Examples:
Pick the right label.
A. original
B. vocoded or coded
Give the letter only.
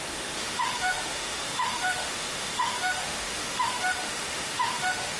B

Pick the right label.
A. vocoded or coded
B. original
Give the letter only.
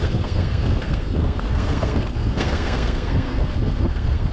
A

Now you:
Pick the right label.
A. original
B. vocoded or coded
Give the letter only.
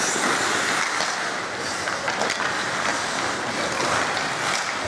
A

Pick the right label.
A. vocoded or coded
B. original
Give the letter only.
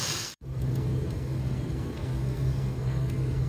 A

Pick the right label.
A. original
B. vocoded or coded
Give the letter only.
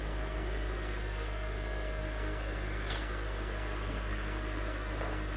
B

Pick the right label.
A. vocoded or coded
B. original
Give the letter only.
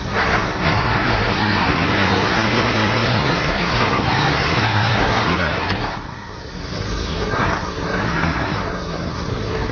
A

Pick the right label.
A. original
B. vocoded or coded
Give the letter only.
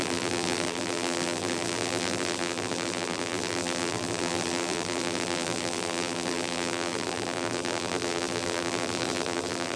B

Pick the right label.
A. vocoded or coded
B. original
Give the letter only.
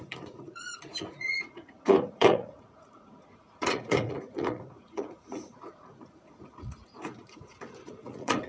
A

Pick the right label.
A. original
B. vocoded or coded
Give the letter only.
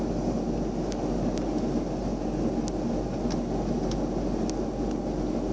A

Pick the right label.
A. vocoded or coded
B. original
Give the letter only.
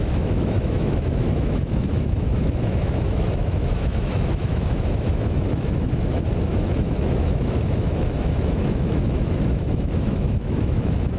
A